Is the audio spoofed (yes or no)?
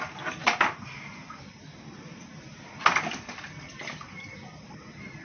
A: no